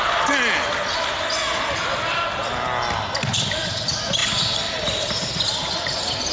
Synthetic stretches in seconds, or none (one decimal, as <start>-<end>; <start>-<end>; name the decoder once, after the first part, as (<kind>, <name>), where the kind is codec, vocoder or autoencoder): none

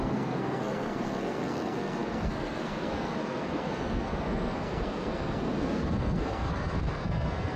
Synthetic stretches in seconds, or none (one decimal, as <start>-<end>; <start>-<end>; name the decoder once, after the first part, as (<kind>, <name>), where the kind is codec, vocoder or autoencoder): 0.0-7.6 (codec, SNAC)